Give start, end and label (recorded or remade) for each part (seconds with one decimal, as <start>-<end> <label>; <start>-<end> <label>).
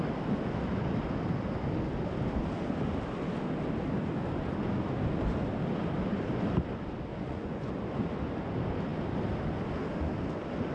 0.0-7.1 recorded; 7.1-7.7 remade; 7.7-10.7 recorded